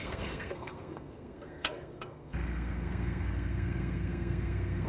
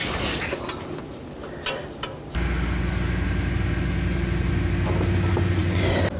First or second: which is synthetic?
first